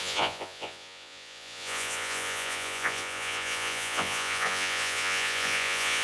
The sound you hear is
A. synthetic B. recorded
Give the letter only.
A